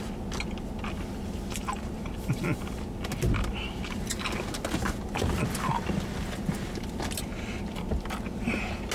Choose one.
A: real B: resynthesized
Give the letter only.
A